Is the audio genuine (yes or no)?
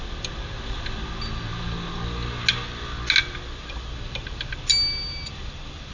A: yes